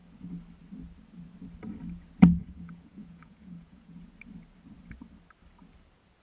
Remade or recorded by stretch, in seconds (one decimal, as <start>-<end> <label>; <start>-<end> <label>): 0.0-2.4 recorded; 2.4-4.0 remade; 4.0-6.2 recorded